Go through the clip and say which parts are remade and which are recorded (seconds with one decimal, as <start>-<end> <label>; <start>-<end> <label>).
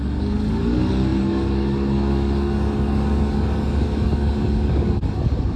0.0-5.6 remade